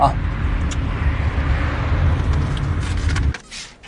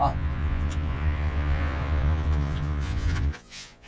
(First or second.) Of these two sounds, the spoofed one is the second